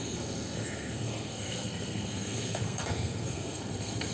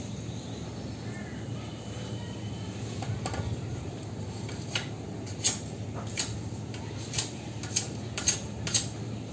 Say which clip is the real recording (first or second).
second